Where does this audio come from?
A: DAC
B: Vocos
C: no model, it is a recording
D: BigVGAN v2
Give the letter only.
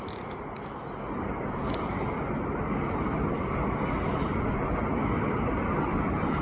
C